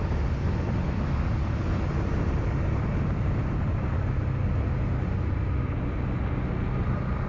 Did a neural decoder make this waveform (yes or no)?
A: no